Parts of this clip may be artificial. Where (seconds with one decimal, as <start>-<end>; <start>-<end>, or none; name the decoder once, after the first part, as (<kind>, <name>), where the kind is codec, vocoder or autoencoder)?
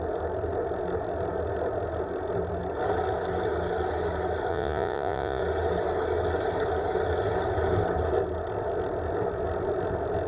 4.5-5.4 (vocoder, Vocos)